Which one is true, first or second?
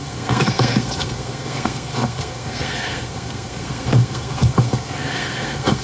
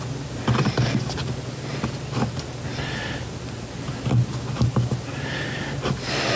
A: second